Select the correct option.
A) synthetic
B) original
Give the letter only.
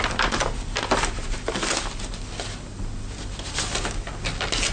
B